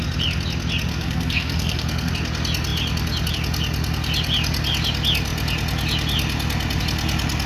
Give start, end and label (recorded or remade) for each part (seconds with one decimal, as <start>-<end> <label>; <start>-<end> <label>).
0.0-0.9 recorded; 0.9-2.1 remade; 2.1-7.5 recorded